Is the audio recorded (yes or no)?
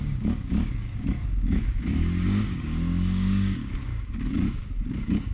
no